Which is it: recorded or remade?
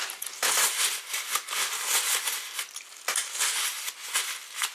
recorded